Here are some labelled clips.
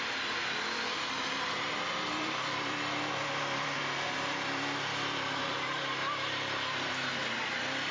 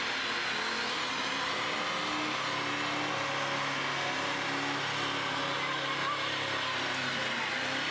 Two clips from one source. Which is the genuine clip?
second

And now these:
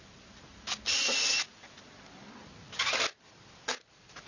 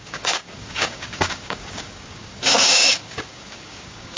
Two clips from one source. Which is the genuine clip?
first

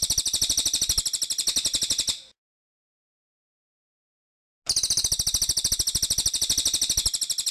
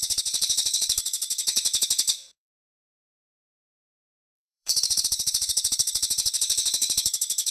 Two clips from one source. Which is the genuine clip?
first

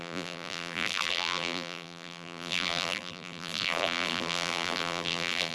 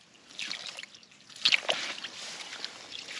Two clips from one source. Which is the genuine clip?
second